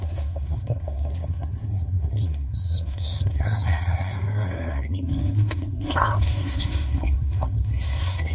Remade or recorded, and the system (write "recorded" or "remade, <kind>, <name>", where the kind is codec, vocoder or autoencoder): remade, codec, SNAC